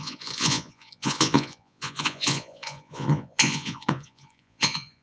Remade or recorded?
remade